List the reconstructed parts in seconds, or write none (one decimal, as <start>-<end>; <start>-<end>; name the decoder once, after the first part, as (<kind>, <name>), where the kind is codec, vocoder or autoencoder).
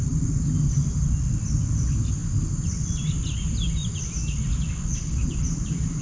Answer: 5.2-6.0 (vocoder, BigVGAN v2)